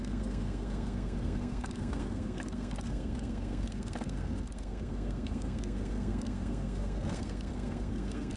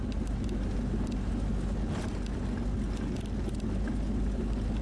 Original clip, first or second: second